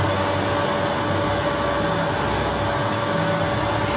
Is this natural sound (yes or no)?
yes